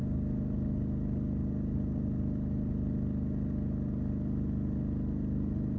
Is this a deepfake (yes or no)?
no